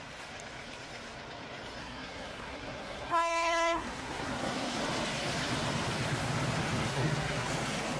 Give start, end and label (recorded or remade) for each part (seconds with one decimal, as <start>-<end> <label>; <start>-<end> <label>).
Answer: 0.0-1.8 recorded; 1.8-4.8 remade; 4.8-6.9 recorded; 6.9-7.5 remade; 7.5-8.0 recorded